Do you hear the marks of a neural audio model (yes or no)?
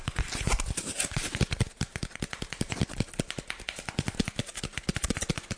no